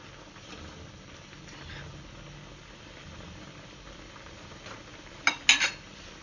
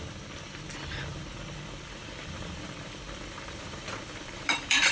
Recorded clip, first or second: first